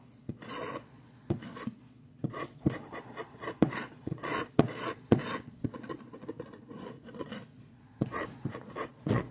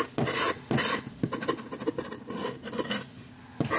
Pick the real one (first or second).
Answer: second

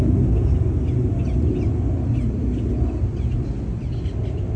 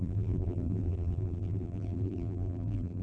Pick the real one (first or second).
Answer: first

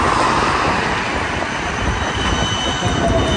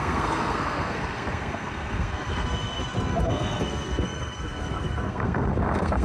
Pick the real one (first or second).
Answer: first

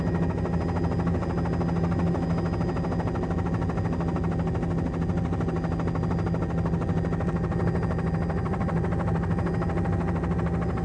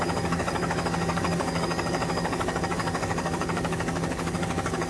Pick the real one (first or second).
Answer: first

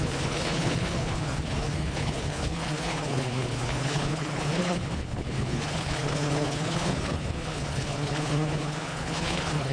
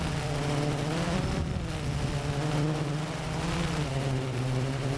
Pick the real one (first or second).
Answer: second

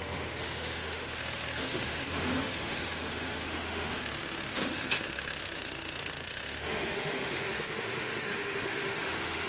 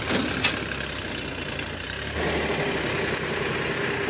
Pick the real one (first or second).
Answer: second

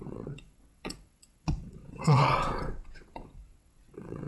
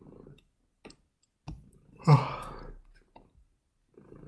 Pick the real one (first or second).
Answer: second